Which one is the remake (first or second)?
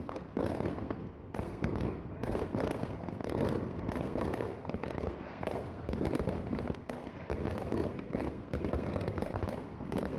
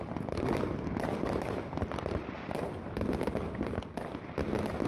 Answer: first